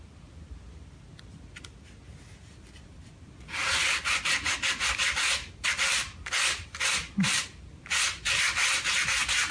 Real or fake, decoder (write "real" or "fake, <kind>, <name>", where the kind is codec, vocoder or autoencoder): real